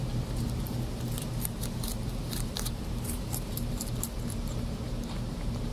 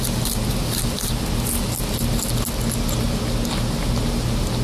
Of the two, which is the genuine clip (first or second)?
second